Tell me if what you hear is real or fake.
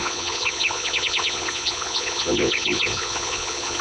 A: fake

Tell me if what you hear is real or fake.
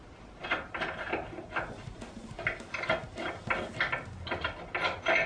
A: real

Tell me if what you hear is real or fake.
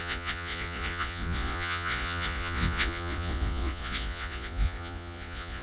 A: fake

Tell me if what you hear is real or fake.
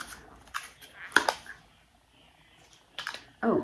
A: real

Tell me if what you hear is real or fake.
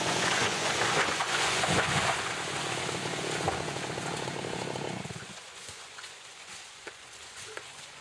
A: fake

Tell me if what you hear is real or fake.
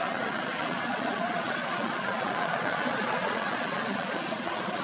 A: fake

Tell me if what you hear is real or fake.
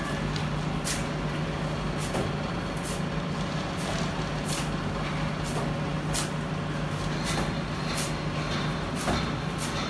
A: real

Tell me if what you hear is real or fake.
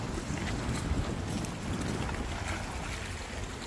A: real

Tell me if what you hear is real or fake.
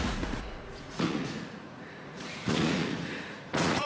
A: fake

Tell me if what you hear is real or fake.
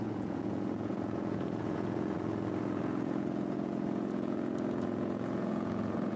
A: fake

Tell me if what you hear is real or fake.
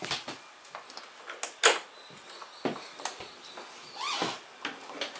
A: real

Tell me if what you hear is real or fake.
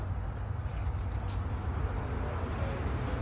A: real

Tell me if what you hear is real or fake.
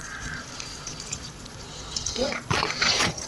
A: fake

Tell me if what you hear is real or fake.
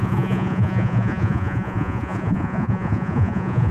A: fake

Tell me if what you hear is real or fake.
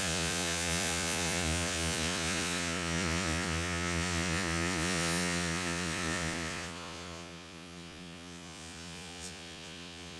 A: fake